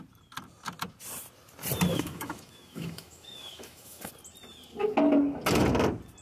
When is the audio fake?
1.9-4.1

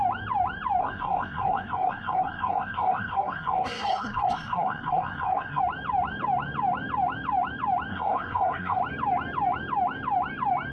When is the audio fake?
0.8-5.6; 7.9-8.8

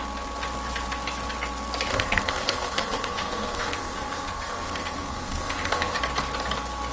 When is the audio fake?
1.9-6.0

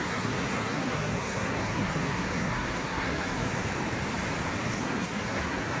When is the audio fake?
0.0-3.7; 4.8-5.8

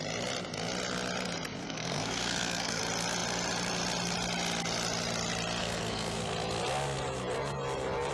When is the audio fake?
1.6-2.8; 5.6-6.2